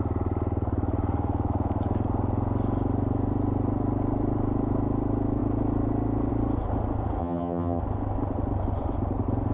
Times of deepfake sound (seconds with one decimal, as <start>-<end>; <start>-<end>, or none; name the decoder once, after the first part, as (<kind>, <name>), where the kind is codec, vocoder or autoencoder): 7.2-7.8 (vocoder, HiFi-GAN)